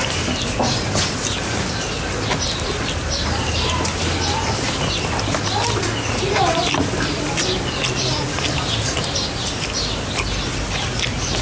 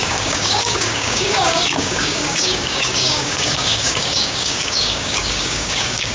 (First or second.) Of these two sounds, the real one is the first